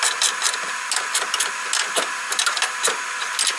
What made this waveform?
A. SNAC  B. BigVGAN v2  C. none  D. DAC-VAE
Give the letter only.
C